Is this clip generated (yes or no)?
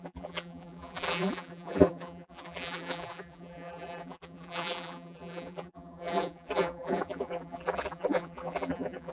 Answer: yes